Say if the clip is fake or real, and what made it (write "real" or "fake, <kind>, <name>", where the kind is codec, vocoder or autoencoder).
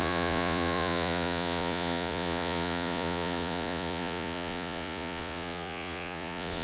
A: fake, vocoder, Vocos